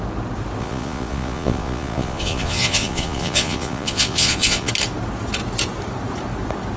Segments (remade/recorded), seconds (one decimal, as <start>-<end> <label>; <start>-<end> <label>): 0.0-0.6 recorded; 0.6-4.7 remade; 4.7-6.8 recorded